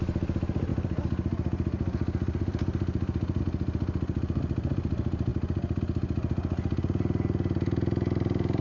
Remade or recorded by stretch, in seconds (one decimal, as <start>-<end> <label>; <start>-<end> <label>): 0.0-0.7 recorded; 0.7-3.4 remade; 3.4-8.6 recorded